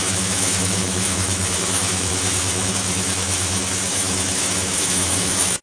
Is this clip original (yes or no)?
no